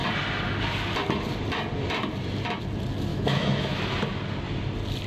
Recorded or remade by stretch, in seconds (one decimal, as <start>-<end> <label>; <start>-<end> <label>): 0.0-3.1 recorded; 3.1-3.8 remade; 3.8-5.1 recorded